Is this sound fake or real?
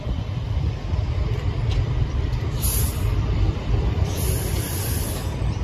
fake